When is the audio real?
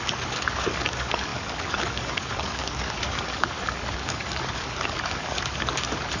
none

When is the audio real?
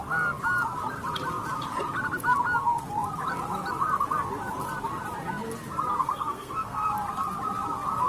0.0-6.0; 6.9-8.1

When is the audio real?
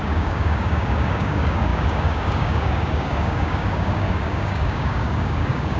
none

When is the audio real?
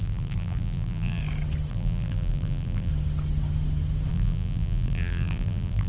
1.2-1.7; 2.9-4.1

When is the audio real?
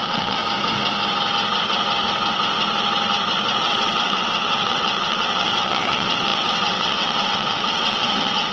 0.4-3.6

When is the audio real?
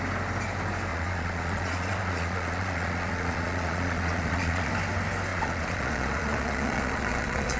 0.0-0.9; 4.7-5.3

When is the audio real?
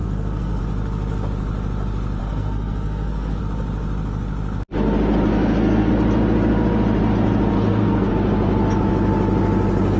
0.6-2.2; 3.4-5.3; 5.9-7.5; 8.1-10.0